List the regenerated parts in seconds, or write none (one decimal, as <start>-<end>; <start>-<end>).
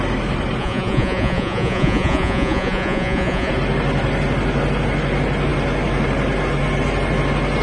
0.6-3.5